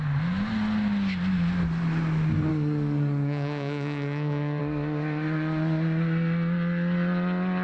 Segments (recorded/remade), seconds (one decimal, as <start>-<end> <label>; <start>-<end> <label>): 0.0-2.5 recorded; 2.5-4.6 remade; 4.6-7.6 recorded